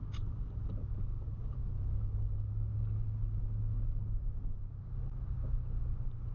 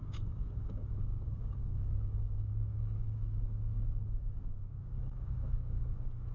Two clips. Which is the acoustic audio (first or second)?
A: first